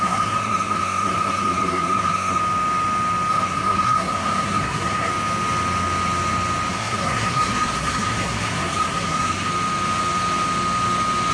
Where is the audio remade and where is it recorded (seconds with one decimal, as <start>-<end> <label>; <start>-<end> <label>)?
0.0-2.4 remade; 2.4-3.3 recorded; 3.3-5.1 remade; 5.1-6.7 recorded; 6.7-9.5 remade; 9.5-11.3 recorded